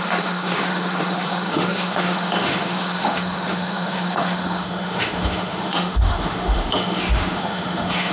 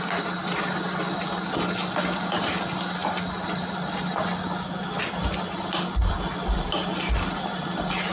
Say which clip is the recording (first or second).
second